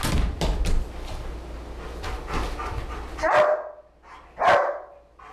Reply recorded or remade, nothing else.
recorded